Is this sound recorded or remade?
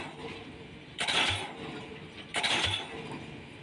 recorded